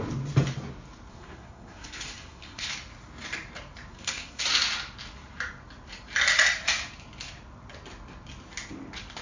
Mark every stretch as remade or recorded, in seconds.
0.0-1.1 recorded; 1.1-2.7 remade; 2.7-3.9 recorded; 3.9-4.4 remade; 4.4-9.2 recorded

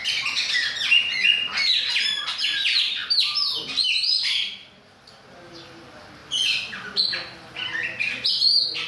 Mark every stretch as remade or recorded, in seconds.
0.0-8.9 recorded